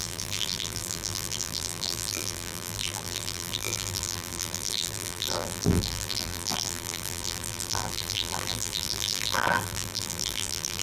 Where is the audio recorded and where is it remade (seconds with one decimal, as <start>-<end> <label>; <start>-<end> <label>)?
0.0-10.8 remade